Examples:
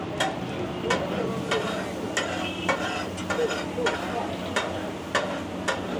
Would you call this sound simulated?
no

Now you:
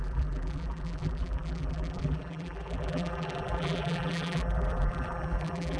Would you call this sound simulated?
yes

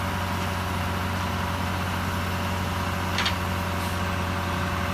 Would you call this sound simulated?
no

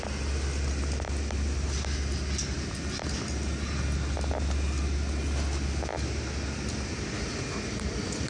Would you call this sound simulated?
no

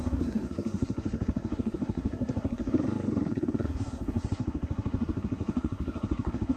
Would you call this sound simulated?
yes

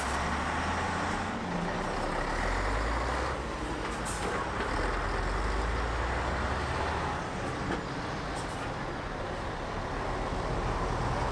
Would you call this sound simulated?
no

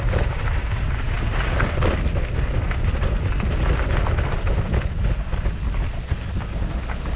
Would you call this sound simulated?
no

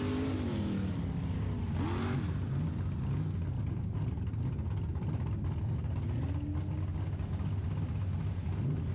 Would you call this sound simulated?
no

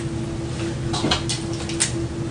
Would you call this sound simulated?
no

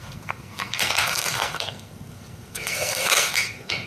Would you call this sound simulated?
yes